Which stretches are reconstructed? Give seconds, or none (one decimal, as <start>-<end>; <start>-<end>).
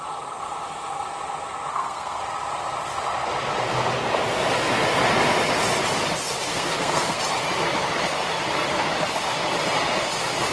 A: 1.7-2.2; 6.5-7.2